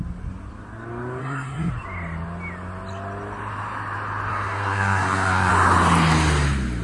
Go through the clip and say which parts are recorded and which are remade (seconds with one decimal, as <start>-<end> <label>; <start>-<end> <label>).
0.0-1.2 recorded; 1.2-1.7 remade; 1.7-4.3 recorded; 4.3-5.5 remade; 5.5-6.8 recorded